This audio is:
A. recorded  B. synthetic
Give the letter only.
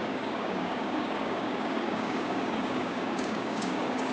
B